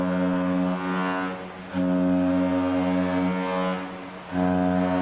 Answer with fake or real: real